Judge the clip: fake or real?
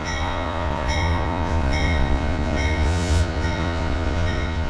fake